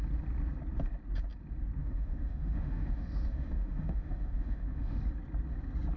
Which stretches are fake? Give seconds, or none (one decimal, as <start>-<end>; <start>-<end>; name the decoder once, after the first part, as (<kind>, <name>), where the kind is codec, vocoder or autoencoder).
1.8-5.0 (autoencoder, DAC-VAE)